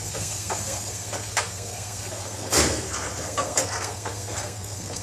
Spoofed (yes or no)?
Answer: yes